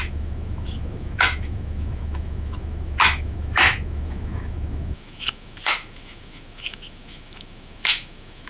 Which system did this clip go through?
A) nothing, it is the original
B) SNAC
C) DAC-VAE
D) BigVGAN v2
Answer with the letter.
C